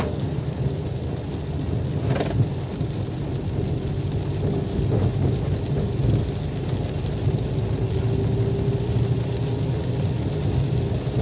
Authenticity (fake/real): real